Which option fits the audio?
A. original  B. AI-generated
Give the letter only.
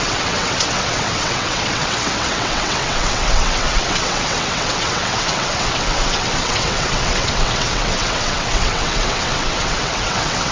B